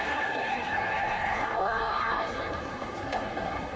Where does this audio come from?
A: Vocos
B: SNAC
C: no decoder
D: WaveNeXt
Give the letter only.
B